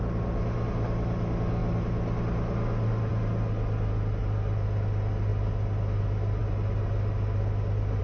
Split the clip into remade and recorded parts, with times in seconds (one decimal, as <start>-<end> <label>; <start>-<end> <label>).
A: 0.0-8.0 recorded